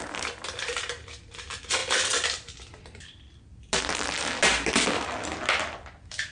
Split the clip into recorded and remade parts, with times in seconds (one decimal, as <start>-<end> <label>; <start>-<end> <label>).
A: 0.0-6.3 recorded